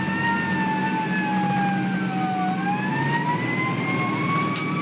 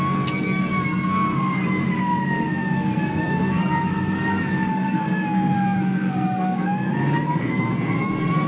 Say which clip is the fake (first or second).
second